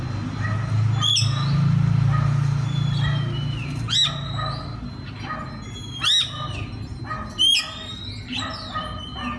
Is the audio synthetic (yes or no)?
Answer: no